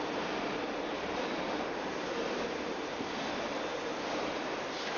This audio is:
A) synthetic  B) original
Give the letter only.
B